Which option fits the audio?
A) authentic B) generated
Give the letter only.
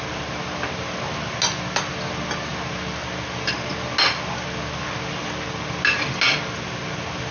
A